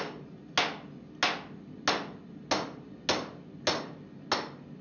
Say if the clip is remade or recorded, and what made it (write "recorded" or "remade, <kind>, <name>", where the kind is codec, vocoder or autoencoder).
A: recorded